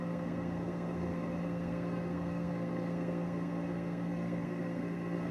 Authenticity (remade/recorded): remade